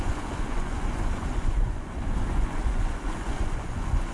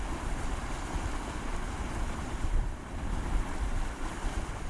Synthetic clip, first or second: first